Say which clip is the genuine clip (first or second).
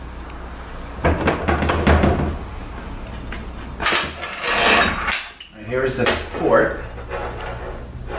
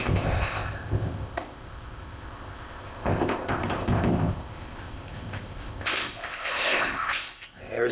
first